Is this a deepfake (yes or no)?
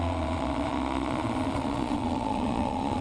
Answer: yes